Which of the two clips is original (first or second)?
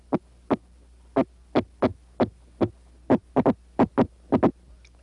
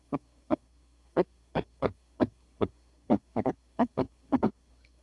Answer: first